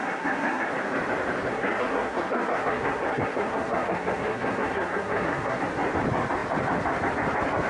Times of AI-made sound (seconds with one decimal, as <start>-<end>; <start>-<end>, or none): 0.0-0.7; 1.5-5.6